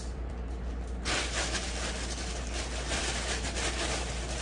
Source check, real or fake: fake